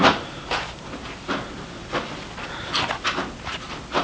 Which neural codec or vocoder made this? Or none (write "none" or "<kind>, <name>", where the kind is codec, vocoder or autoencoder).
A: none